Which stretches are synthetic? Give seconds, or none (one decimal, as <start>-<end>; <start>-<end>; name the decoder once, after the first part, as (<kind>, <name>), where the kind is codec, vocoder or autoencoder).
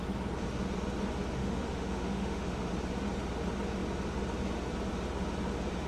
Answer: 1.4-2.7 (autoencoder, DAC-VAE)